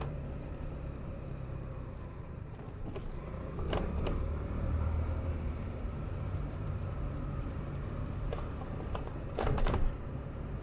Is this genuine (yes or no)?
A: no